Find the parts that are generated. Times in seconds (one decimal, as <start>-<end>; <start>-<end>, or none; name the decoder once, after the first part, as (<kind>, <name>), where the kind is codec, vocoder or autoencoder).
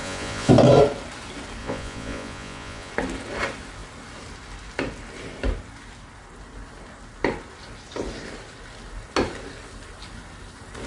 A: 0.0-0.5 (vocoder, Vocos); 1.6-2.9